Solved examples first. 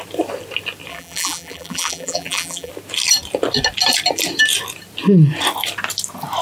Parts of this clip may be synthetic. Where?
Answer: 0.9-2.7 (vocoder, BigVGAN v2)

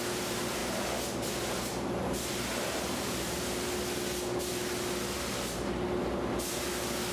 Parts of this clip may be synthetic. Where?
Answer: none

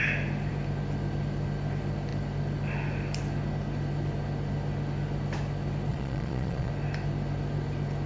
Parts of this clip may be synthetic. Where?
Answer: 5.9-6.7 (vocoder, Vocos)